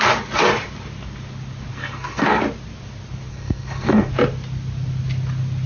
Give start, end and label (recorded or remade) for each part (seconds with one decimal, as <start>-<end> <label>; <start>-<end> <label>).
0.0-1.7 recorded; 1.7-2.4 remade; 2.4-3.3 recorded; 3.3-4.1 remade; 4.1-5.7 recorded